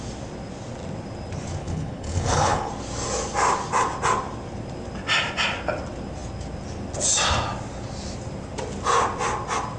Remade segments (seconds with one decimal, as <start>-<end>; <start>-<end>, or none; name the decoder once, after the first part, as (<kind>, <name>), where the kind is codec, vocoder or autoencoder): 1.6-2.7 (codec, HILCodec)